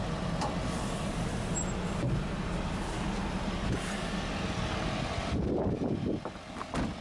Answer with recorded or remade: recorded